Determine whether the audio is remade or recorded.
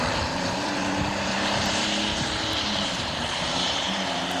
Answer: remade